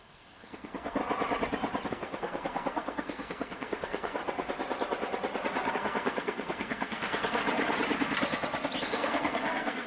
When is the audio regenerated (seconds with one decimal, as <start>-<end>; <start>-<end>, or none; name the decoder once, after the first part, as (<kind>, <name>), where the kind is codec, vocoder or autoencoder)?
0.0-1.0 (codec, SNAC); 1.9-4.2; 5.7-7.4; 8.8-9.9